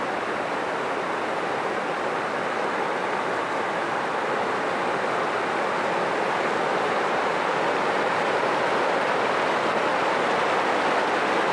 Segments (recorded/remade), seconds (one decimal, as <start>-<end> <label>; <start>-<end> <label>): 0.0-6.7 recorded; 6.7-8.6 remade; 8.6-11.5 recorded